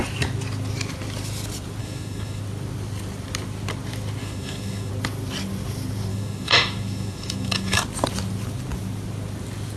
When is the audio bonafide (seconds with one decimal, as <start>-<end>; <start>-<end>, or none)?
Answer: 0.0-1.8; 2.4-4.2; 4.9-6.1; 7.8-9.8